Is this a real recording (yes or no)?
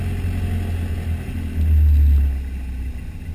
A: yes